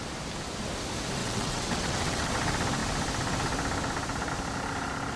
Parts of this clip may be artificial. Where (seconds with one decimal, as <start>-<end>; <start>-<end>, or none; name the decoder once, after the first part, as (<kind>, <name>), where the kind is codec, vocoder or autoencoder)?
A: 1.2-2.3 (vocoder, WaveNeXt)